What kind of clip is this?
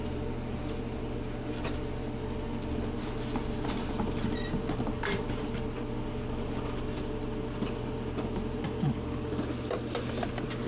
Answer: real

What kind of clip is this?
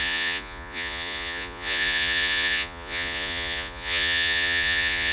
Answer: fake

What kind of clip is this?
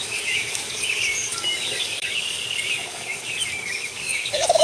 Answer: fake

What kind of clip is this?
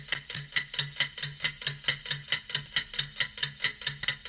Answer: real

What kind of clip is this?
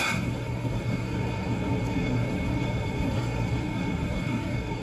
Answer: fake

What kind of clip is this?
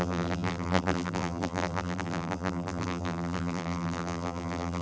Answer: fake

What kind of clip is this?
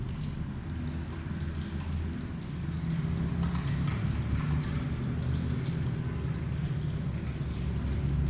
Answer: real